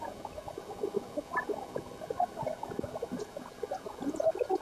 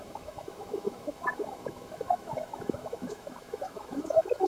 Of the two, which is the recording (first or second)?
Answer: first